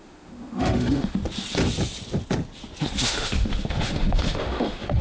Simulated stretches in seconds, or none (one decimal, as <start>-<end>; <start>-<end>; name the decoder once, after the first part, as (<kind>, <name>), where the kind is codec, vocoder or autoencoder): 0.0-1.2 (autoencoder, DAC-VAE); 2.8-5.0

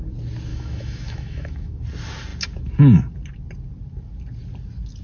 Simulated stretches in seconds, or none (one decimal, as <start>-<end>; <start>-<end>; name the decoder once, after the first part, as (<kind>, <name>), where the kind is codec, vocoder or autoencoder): 0.5-1.8 (autoencoder, DAC-VAE)

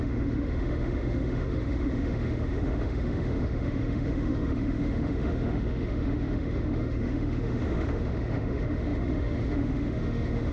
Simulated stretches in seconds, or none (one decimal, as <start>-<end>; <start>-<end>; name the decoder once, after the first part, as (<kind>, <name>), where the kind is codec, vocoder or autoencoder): 0.0-10.5 (autoencoder, DAC-VAE)

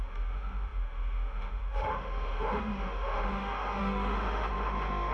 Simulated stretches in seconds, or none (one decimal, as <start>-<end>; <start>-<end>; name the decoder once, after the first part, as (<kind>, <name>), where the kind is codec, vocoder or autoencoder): 0.0-5.1 (autoencoder, DAC-VAE)

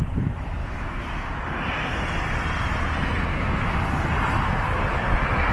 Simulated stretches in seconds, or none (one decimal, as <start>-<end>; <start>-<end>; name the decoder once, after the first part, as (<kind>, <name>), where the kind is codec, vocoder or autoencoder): 0.6-1.3 (autoencoder, DAC-VAE); 3.3-3.8

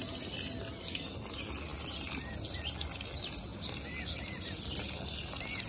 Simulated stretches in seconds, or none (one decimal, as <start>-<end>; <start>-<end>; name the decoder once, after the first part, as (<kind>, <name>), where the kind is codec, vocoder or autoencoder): none